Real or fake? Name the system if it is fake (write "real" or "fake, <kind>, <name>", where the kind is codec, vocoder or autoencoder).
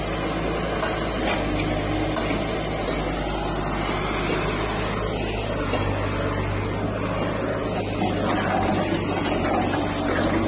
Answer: real